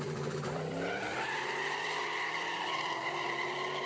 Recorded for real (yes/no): no